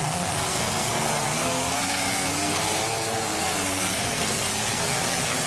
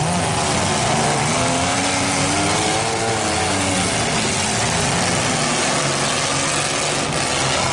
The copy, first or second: first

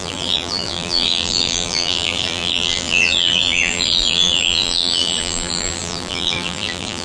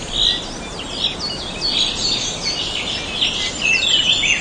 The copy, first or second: first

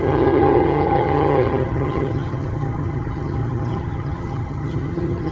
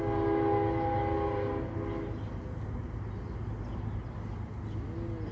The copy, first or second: first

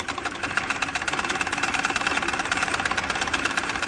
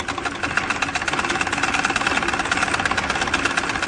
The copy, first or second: first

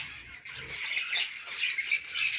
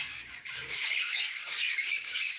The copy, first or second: second